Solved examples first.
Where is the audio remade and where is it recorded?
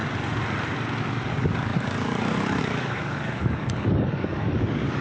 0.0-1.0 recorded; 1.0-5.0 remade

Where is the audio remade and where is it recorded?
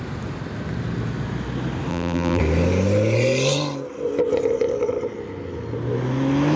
0.0-1.9 recorded; 1.9-2.4 remade; 2.4-6.6 recorded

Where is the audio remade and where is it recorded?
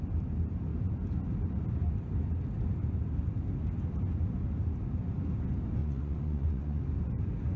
0.0-5.8 recorded; 5.8-6.8 remade; 6.8-7.6 recorded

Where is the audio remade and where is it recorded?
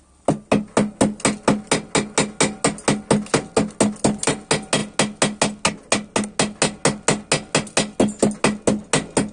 0.0-9.3 recorded